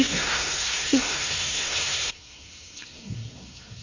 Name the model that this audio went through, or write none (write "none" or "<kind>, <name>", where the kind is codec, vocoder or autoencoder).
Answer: codec, SNAC